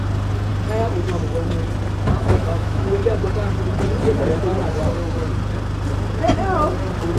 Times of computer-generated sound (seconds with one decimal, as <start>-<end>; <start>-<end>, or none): 2.2-3.0